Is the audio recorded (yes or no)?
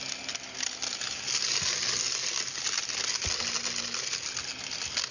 yes